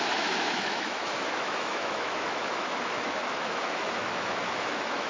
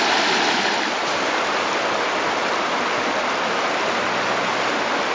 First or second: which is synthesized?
first